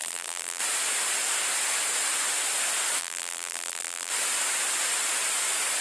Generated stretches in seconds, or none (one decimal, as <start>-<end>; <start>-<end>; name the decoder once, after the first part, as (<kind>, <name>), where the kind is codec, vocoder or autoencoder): 0.0-0.6 (vocoder, BigVGAN v2); 3.0-4.1